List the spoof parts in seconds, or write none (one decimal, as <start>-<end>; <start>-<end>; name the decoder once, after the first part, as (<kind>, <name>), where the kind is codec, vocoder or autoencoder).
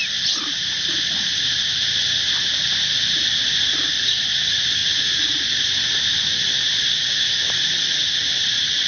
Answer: none